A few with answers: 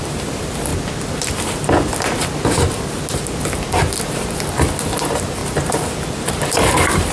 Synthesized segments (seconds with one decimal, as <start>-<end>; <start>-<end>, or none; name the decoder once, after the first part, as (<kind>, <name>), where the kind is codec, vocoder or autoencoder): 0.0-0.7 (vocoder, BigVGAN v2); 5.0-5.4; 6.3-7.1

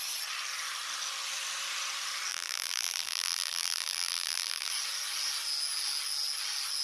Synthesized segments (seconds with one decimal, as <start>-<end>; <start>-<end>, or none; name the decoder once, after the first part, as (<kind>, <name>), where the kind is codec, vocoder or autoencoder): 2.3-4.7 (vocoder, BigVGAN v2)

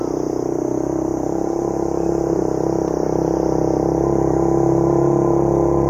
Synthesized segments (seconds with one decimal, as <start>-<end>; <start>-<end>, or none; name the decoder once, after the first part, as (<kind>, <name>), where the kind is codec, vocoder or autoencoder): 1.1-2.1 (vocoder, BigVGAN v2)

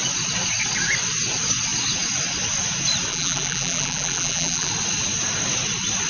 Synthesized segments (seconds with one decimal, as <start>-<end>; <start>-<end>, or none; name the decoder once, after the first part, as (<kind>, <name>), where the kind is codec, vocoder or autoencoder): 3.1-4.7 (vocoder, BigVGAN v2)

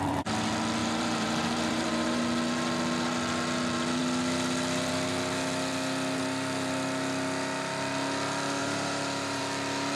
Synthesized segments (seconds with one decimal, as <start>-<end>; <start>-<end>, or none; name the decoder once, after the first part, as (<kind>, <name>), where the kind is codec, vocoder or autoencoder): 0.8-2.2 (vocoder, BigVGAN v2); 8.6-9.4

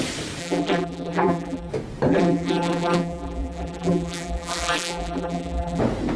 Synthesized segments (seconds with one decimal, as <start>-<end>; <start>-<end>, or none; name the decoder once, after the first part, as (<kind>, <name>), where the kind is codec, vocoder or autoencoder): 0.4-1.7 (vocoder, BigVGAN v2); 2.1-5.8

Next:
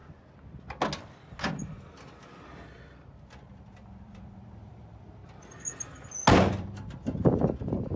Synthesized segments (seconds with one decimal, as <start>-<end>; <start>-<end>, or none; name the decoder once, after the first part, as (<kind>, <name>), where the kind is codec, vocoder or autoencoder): 3.3-5.2 (vocoder, BigVGAN v2); 6.6-8.0

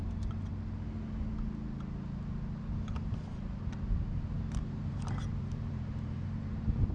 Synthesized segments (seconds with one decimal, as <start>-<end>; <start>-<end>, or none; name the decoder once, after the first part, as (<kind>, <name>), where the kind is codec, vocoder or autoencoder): 0.0-0.5 (vocoder, BigVGAN v2); 4.6-6.9